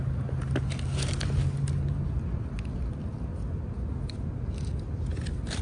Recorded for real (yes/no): yes